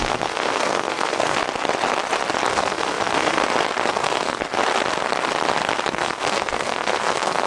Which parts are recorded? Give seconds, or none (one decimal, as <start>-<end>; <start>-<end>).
1.4-2.5; 3.4-3.9; 4.4-5.9